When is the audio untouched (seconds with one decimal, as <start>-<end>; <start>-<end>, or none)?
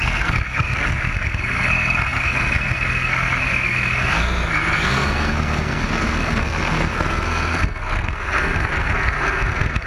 none